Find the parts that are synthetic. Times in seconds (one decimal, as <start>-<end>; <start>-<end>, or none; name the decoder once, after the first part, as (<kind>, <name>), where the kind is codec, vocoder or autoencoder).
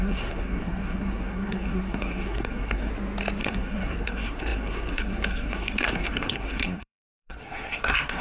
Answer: 0.0-2.9 (codec, SNAC); 3.4-8.2